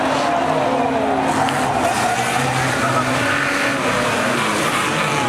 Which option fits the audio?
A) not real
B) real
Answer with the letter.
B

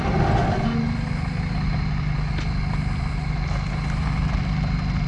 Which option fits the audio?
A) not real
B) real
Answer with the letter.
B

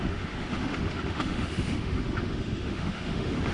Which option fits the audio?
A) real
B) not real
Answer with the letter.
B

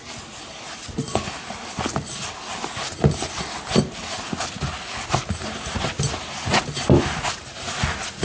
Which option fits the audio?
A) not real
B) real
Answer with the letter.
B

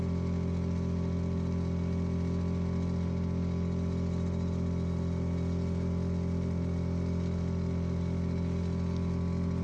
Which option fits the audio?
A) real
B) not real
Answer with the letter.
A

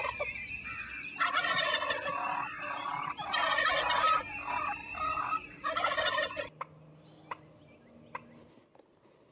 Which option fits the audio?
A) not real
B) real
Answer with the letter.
B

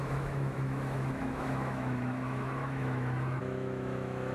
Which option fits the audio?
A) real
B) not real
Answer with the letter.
B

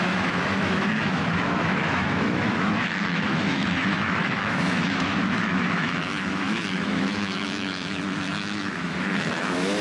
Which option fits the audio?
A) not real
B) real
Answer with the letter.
A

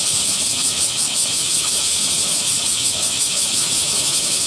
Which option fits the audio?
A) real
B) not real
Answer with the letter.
B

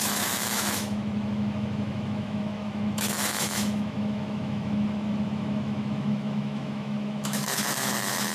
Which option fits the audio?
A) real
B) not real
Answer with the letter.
B